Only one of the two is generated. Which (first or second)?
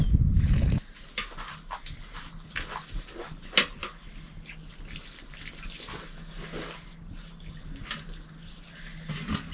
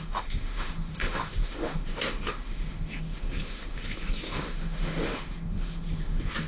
second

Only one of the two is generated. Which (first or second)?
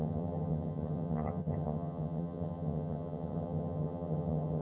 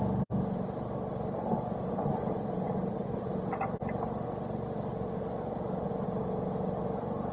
first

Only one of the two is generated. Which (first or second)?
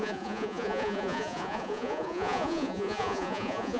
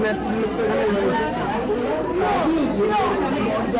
first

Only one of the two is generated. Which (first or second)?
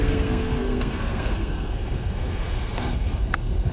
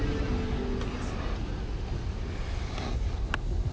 first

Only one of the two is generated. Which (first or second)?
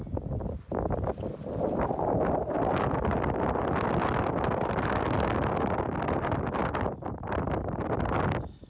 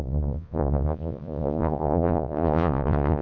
second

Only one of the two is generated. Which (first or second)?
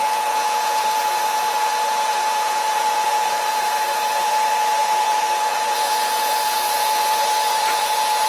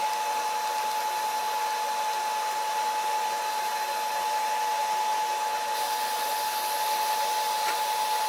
first